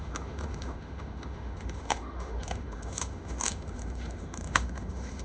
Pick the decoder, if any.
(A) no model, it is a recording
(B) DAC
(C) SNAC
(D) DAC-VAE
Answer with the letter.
D